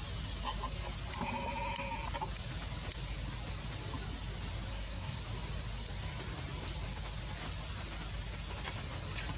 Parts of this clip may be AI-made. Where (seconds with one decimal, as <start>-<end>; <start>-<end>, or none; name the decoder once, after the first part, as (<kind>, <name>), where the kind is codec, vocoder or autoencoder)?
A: 4.7-5.2 (codec, SNAC)